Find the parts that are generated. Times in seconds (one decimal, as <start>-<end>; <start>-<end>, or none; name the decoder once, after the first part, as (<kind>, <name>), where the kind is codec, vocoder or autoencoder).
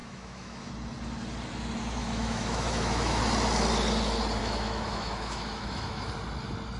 0.0-0.7 (autoencoder, DAC-VAE); 2.0-3.2; 4.4-6.1